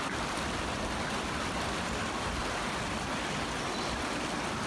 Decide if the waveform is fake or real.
real